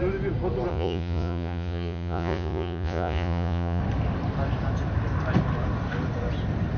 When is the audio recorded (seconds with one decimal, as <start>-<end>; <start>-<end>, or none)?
0.0-0.7; 3.8-6.8